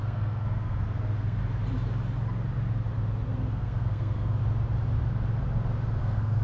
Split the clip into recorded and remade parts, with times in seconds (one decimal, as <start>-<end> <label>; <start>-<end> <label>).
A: 0.0-1.4 remade; 1.4-3.3 recorded; 3.3-4.4 remade; 4.4-6.0 recorded; 6.0-6.4 remade